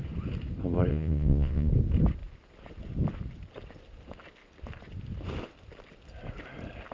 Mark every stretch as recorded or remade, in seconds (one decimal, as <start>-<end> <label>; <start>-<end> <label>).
0.0-0.9 recorded; 0.9-1.7 remade; 1.7-6.9 recorded